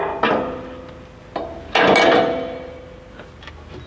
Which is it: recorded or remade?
recorded